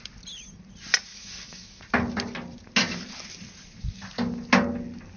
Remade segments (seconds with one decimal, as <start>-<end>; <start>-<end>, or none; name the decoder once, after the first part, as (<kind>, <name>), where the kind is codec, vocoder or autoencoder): 1.1-1.8 (autoencoder, DAC-VAE)